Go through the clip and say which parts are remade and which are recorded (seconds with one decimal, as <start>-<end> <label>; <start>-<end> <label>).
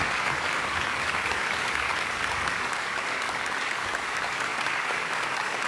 0.0-5.7 remade